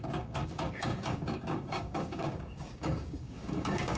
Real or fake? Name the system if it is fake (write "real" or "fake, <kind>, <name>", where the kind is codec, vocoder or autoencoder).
fake, codec, DAC